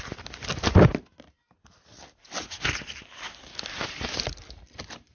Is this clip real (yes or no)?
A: yes